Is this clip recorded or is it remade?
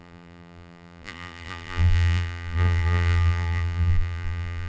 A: remade